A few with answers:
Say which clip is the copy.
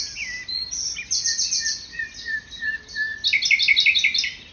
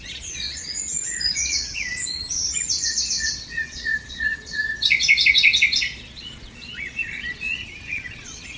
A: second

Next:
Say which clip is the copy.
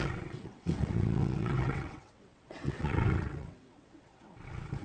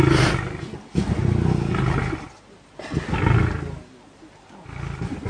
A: first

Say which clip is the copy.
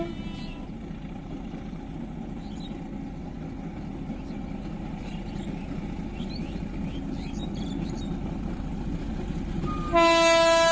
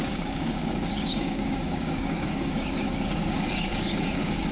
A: second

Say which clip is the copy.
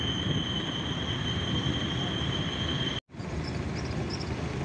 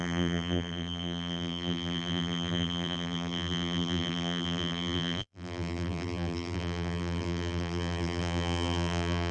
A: second